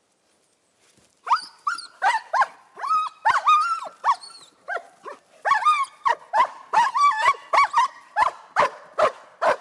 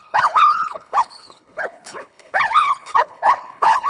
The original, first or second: first